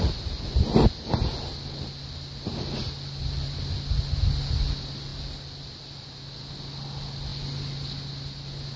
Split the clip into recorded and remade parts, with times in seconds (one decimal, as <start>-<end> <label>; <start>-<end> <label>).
0.0-8.8 recorded